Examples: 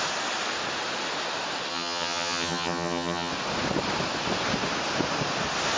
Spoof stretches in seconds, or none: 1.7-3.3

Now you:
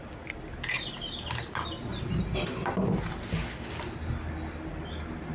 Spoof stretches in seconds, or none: none

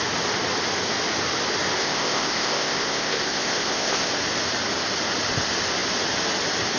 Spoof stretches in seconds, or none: 1.8-4.1